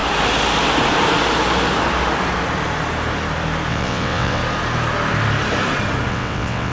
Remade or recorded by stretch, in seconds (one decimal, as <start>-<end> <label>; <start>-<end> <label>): 0.0-3.7 recorded; 3.7-4.4 remade; 4.4-6.1 recorded; 6.1-6.7 remade